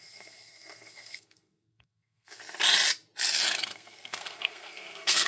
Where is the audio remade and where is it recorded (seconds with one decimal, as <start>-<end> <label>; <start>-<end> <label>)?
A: 0.0-2.4 remade; 2.4-3.5 recorded; 3.5-5.3 remade